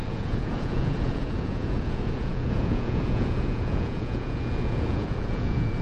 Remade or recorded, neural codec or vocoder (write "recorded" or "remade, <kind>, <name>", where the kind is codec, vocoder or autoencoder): remade, vocoder, Vocos